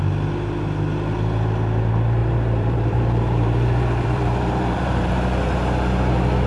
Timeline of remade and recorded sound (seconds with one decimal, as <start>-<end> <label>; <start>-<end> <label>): 0.0-2.2 recorded; 2.2-5.1 remade; 5.1-6.5 recorded

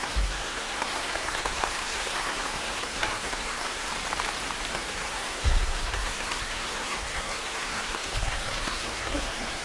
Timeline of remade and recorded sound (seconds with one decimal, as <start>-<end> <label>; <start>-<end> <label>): 0.0-3.9 remade; 3.9-4.7 recorded; 4.7-9.6 remade

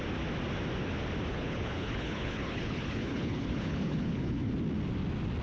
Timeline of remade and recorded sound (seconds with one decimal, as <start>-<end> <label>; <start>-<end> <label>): 0.0-1.3 recorded; 1.3-4.5 remade; 4.5-5.4 recorded

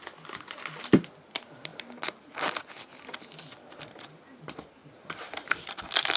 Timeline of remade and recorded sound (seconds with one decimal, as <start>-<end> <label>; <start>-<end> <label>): 0.0-1.7 recorded; 1.7-2.3 remade; 2.3-4.8 recorded; 4.8-5.8 remade; 5.8-6.2 recorded

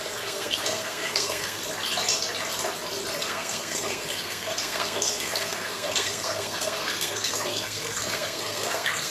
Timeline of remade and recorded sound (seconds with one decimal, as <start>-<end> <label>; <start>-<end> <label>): 0.0-1.6 remade; 1.6-3.2 recorded; 3.2-9.1 remade

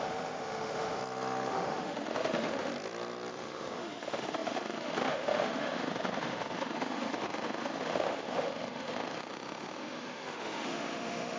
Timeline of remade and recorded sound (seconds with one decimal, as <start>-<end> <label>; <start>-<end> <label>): 0.0-1.0 remade; 1.0-1.5 recorded; 1.5-2.7 remade; 2.7-3.3 recorded; 3.3-11.4 remade